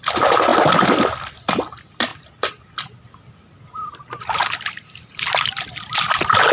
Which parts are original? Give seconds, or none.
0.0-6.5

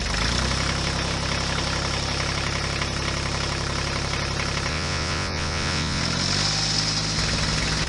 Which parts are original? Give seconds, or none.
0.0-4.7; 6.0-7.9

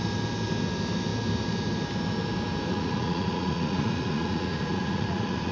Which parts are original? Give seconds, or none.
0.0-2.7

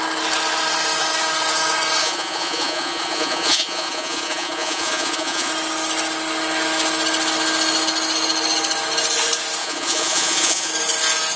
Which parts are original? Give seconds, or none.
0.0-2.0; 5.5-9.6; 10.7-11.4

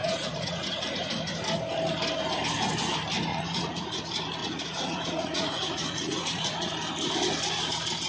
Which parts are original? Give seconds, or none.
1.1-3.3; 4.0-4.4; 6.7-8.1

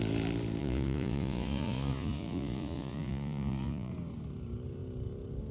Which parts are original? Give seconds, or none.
0.0-0.6; 3.9-5.5